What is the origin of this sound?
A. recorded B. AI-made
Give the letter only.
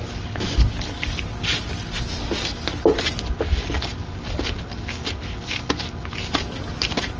A